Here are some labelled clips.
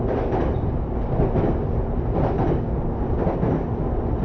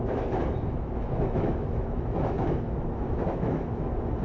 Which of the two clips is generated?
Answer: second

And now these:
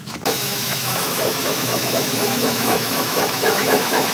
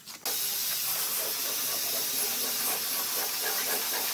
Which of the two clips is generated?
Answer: first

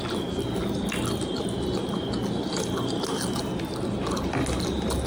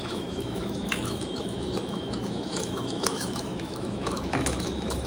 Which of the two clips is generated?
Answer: second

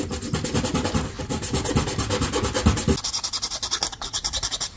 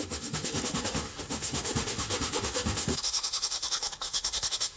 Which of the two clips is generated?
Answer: second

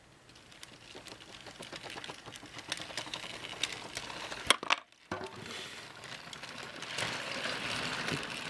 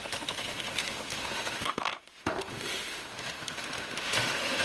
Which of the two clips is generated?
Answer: second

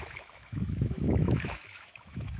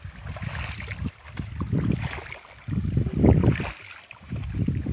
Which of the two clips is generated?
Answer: first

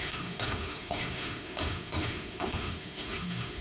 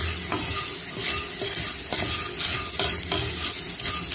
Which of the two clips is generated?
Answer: first